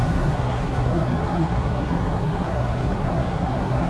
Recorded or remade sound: remade